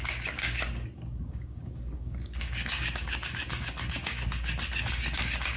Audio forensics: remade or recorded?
remade